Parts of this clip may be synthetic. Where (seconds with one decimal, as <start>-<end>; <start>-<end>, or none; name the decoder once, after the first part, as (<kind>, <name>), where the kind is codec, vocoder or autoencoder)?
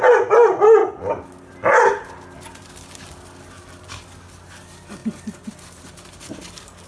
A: none